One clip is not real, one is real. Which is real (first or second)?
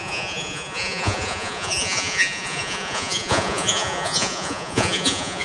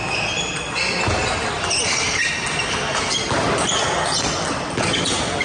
second